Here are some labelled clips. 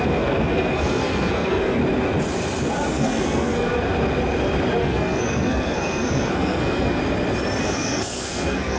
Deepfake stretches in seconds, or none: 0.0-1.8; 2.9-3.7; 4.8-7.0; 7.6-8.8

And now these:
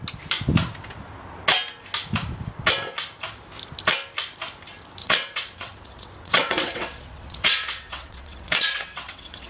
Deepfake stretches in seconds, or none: 5.0-9.5

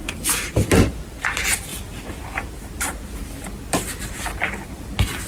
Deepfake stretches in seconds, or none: 1.7-4.8

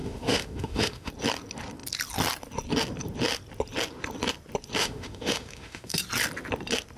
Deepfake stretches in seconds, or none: 0.0-1.1; 4.8-6.0